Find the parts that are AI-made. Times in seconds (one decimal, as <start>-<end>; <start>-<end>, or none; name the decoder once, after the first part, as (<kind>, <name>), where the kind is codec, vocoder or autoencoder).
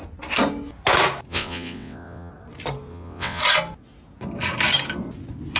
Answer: 1.3-2.3 (vocoder, WaveNeXt); 2.9-3.4